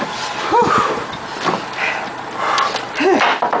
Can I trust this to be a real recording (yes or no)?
yes